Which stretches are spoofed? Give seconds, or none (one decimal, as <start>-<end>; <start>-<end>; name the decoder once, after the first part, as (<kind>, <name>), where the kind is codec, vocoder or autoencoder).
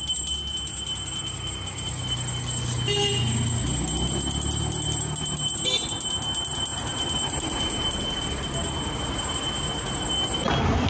none